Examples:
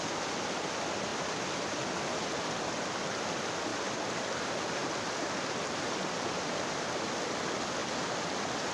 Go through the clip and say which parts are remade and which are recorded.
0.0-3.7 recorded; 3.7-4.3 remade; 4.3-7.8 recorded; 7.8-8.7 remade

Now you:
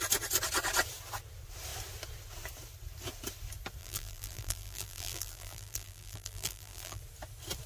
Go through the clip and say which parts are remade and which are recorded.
0.0-3.8 recorded; 3.8-7.0 remade; 7.0-7.7 recorded

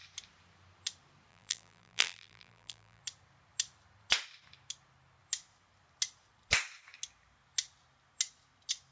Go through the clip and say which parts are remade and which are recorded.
0.0-1.3 recorded; 1.3-3.0 remade; 3.0-8.9 recorded

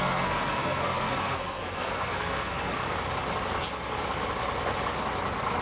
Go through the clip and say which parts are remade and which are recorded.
0.0-2.8 remade; 2.8-5.6 recorded

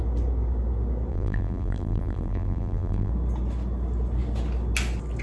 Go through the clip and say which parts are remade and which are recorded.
0.0-1.1 recorded; 1.1-3.1 remade; 3.1-5.2 recorded

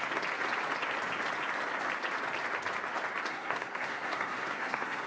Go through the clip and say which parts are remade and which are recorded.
0.0-3.3 recorded; 3.3-5.1 remade

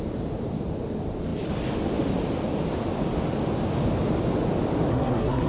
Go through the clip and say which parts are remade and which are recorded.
0.0-4.9 recorded; 4.9-5.5 remade